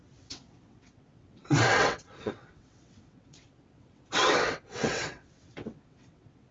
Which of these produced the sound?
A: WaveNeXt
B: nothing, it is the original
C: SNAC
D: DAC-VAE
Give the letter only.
A